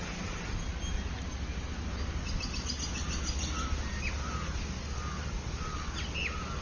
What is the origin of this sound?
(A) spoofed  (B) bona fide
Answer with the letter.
B